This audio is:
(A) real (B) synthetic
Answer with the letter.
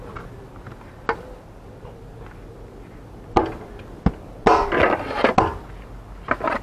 A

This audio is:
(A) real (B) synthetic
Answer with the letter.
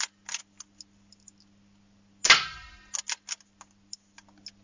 A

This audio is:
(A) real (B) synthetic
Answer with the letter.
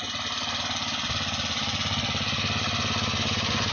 A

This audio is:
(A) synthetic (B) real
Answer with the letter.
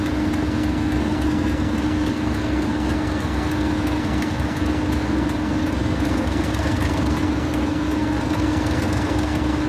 A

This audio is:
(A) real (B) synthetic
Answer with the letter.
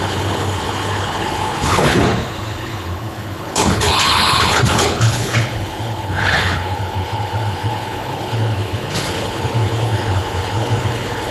B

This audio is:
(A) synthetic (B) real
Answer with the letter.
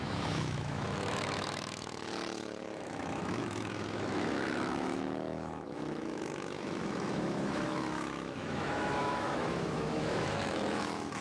A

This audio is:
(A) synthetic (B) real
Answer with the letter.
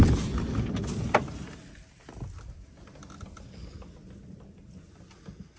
B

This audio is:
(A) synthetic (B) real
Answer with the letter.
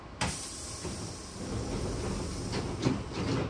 B